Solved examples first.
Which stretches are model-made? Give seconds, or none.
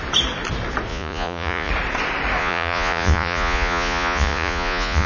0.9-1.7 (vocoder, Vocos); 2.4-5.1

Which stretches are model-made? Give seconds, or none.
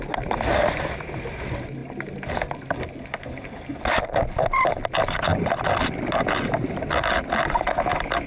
none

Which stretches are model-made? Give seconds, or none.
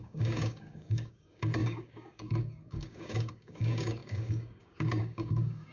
0.0-5.7 (codec, DAC)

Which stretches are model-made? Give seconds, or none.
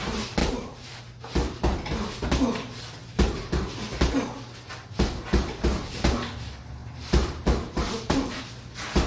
0.4-1.0 (vocoder, BigVGAN v2); 3.0-3.9; 6.8-8.4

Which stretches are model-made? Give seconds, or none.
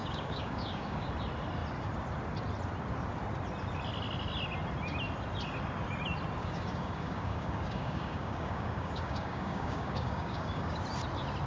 0.0-1.1 (codec, DAC); 6.4-10.8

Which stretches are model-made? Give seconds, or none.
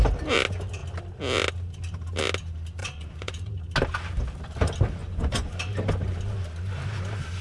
2.8-3.5 (vocoder, Vocos); 5.0-5.6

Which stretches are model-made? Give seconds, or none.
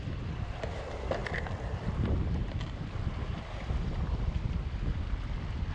1.2-3.2 (vocoder, BigVGAN v2)